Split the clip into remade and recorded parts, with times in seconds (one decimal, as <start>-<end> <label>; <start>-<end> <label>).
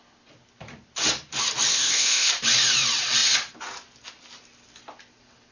0.0-1.7 recorded; 1.7-2.3 remade; 2.3-5.5 recorded